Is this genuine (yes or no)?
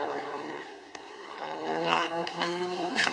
no